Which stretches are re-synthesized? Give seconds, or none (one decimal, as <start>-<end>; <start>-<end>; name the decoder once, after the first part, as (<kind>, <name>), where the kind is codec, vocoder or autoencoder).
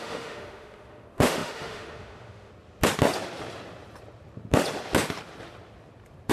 0.0-2.5 (autoencoder, DAC-VAE)